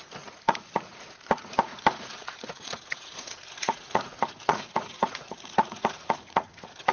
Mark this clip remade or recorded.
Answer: remade